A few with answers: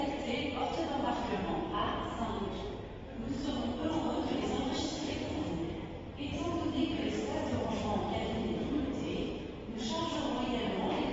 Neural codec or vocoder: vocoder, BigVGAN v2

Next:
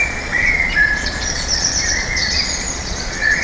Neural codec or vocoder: vocoder, Vocos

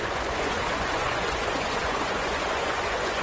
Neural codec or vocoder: vocoder, Vocos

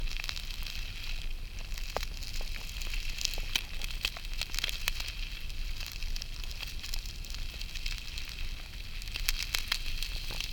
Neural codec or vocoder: none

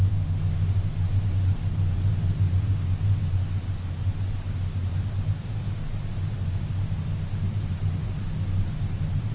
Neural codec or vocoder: none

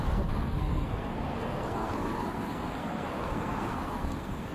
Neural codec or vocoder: codec, SNAC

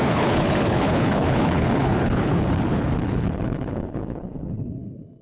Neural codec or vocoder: codec, HILCodec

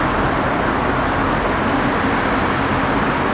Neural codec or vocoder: none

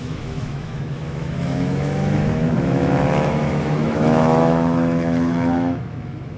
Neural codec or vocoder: autoencoder, DAC-VAE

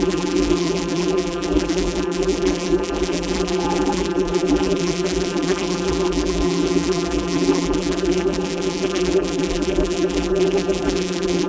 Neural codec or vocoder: vocoder, BigVGAN v2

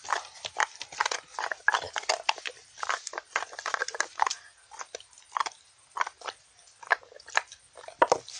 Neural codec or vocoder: none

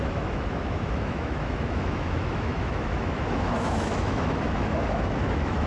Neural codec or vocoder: autoencoder, DAC-VAE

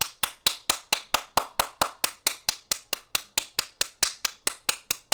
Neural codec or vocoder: none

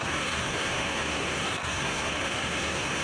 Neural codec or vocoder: codec, SNAC